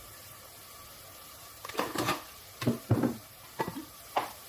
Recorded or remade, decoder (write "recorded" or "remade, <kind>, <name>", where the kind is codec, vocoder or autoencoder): remade, vocoder, BigVGAN v2